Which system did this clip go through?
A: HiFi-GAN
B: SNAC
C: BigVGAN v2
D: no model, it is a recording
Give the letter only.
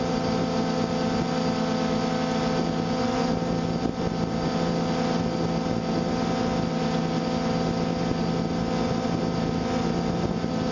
D